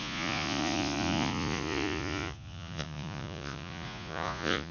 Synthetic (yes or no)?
yes